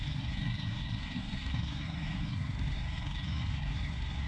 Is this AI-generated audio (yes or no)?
yes